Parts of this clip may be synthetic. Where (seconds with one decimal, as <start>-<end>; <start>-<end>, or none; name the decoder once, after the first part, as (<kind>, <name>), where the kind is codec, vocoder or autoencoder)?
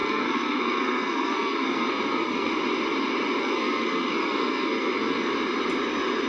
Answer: 0.0-2.5 (codec, SNAC); 3.4-5.3